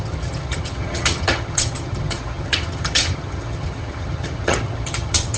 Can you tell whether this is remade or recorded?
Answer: remade